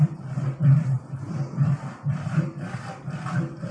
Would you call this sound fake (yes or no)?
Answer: no